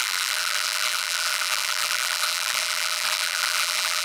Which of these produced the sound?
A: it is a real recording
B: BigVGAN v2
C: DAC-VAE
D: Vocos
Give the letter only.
B